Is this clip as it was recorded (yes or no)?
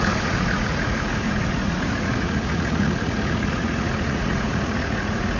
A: no